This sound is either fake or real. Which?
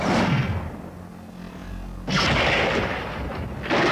real